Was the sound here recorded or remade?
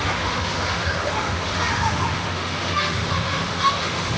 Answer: remade